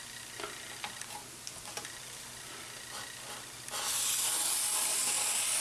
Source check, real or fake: real